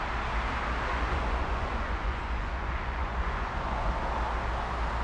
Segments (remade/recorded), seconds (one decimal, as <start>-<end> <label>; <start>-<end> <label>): 0.0-0.9 recorded; 0.9-3.9 remade; 3.9-5.0 recorded